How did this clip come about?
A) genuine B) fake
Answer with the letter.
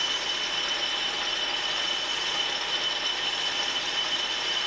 A